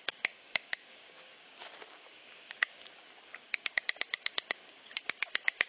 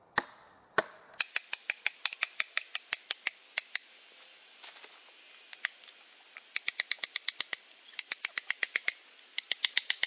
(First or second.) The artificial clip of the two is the first